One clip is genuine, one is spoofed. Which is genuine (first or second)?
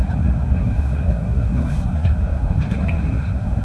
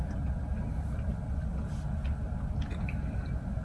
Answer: second